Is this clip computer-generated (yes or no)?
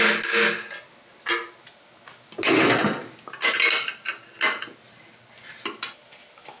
no